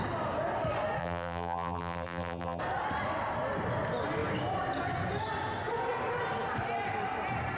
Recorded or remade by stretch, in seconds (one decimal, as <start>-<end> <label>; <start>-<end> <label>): 0.0-1.0 recorded; 1.0-2.6 remade; 2.6-7.6 recorded